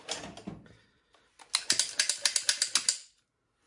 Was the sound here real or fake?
real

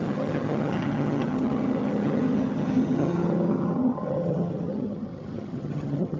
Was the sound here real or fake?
fake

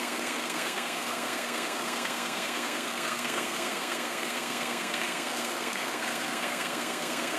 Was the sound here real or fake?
fake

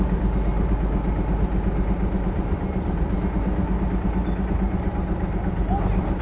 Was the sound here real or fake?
real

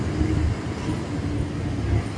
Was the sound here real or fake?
real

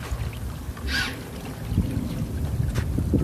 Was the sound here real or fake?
real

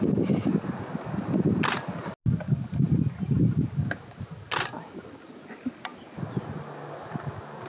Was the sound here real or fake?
real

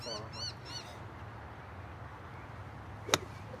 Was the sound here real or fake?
real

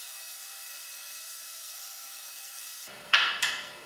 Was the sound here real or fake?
fake